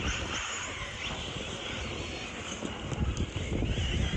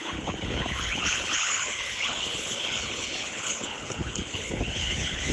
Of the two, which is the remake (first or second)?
second